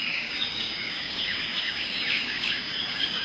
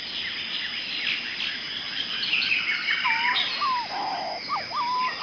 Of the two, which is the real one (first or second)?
second